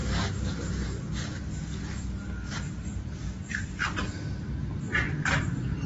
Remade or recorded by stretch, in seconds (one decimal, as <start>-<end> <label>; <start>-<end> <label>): 0.0-5.9 recorded